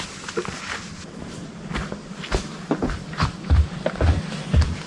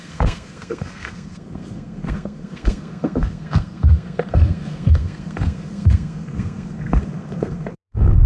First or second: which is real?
first